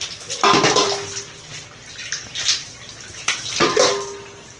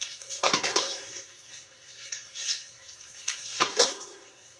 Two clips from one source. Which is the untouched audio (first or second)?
first